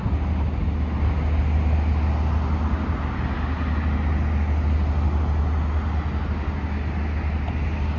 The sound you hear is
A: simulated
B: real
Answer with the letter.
B